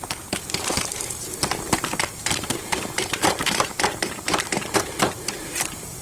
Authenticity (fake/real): fake